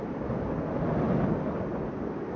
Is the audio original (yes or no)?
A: yes